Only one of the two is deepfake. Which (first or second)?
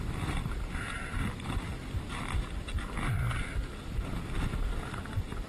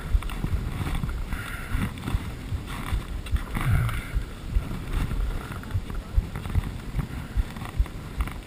second